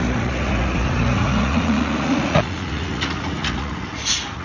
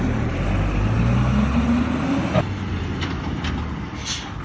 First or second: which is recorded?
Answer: second